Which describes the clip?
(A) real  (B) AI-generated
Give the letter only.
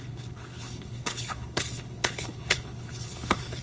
B